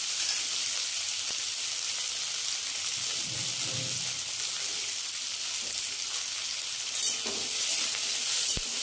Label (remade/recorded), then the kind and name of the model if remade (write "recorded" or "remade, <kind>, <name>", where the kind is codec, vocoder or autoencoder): recorded